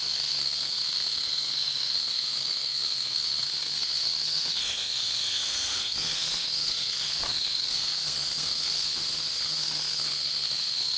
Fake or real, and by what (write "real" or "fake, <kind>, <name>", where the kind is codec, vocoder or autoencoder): fake, codec, SNAC